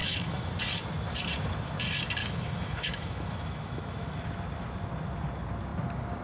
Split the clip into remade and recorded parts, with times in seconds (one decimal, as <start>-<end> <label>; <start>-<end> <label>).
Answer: 0.0-0.5 remade; 0.5-2.2 recorded; 2.2-4.2 remade; 4.2-6.2 recorded